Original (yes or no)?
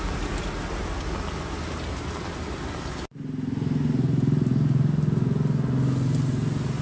yes